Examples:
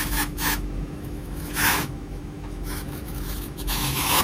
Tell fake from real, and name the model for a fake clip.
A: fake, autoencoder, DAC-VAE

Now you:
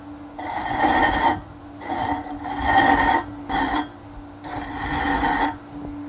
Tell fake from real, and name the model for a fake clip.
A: real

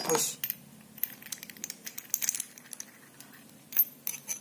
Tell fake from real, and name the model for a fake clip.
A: real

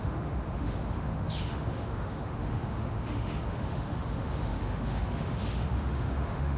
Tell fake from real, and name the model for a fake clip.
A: fake, autoencoder, DAC-VAE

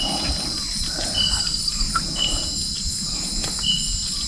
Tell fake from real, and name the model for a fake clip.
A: real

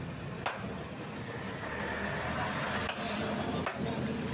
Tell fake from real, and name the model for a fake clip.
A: real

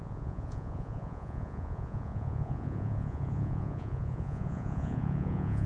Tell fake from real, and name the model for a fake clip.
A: fake, vocoder, Vocos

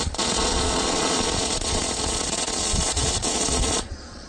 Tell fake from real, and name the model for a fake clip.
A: fake, vocoder, Vocos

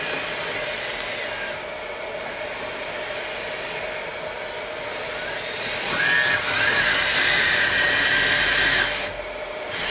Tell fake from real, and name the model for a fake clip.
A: real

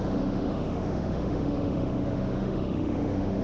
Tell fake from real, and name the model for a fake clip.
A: fake, autoencoder, DAC-VAE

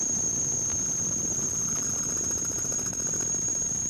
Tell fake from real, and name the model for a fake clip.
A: real